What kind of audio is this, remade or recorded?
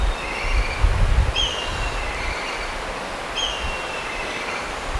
recorded